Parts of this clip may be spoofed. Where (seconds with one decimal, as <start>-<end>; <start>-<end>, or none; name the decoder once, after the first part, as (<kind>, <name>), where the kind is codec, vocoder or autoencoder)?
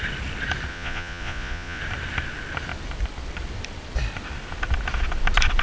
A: 0.7-1.8 (vocoder, Vocos)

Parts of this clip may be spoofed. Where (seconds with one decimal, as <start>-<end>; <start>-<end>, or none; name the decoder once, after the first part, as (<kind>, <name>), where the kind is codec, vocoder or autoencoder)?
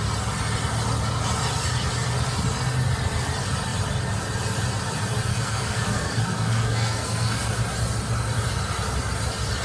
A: 5.3-7.5 (codec, SNAC)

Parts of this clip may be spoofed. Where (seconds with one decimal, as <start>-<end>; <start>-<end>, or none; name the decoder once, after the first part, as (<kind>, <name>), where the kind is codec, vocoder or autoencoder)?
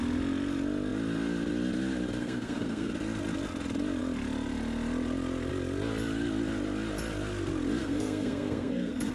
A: 2.2-2.9 (codec, SNAC); 7.8-9.1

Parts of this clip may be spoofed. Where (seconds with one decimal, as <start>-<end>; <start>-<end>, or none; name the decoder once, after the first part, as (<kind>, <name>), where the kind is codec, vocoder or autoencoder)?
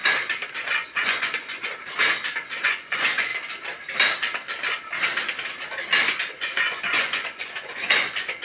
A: 0.6-1.7 (vocoder, Vocos); 2.6-3.3; 6.3-8.4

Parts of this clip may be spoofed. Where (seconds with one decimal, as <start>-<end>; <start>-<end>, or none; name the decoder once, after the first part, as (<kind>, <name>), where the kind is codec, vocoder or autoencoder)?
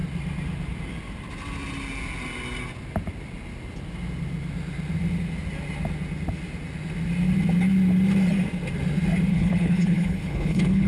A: 9.3-10.9 (codec, HILCodec)